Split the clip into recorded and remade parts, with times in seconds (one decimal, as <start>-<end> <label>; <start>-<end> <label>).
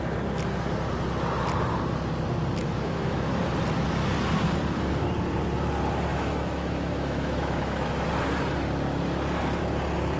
0.0-2.6 recorded; 2.6-3.4 remade; 3.4-6.1 recorded; 6.1-8.1 remade; 8.1-10.2 recorded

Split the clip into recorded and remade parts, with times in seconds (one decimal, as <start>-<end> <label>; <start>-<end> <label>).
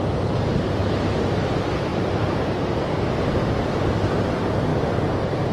0.0-1.9 recorded; 1.9-2.9 remade; 2.9-5.5 recorded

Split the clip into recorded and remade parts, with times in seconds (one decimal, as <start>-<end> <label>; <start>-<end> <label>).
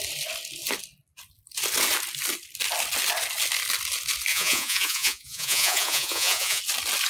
0.0-4.3 recorded; 4.3-6.6 remade; 6.6-7.1 recorded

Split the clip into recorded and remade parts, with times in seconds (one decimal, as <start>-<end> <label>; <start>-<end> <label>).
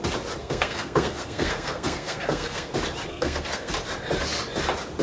0.0-0.4 recorded; 0.4-2.7 remade; 2.7-3.1 recorded; 3.1-3.7 remade; 3.7-5.0 recorded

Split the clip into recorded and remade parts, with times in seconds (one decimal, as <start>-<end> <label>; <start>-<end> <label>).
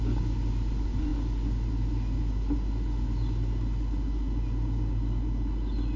0.0-6.0 recorded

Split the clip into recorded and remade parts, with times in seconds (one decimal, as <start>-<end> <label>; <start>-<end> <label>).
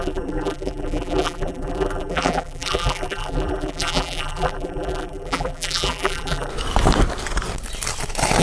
0.0-6.5 remade; 6.5-8.4 recorded